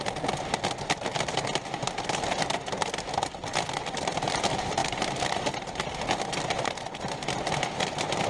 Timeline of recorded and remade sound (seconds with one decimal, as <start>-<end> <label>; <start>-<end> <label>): 0.0-4.8 recorded; 4.8-5.9 remade; 5.9-8.3 recorded